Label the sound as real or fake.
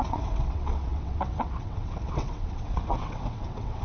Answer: fake